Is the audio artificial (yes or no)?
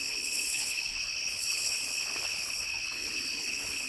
yes